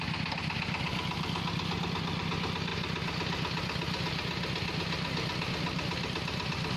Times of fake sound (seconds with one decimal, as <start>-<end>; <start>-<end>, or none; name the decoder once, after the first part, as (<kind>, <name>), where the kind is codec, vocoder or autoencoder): none